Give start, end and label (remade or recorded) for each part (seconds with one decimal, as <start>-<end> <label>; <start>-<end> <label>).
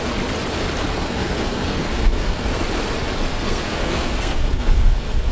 0.0-0.8 recorded; 0.8-2.6 remade; 2.6-3.3 recorded; 3.3-5.3 remade